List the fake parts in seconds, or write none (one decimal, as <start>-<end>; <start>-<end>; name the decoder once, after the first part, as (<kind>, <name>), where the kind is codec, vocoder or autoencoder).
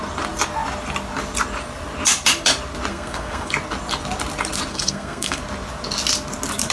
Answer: 2.9-3.5 (codec, SNAC); 4.7-5.4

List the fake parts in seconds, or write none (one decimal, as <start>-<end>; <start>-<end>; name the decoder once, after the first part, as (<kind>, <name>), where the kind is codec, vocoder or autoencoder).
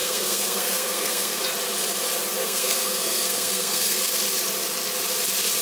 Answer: 0.0-1.4 (codec, SNAC); 2.4-4.1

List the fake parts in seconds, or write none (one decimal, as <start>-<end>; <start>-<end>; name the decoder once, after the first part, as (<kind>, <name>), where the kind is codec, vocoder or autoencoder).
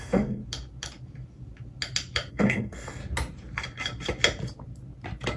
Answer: 0.0-0.4 (codec, SNAC); 2.3-3.0